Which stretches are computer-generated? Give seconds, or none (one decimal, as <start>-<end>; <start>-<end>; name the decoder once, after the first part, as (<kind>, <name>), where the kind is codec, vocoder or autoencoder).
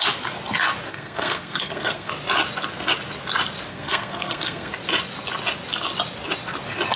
0.9-2.1 (codec, SNAC); 3.7-4.7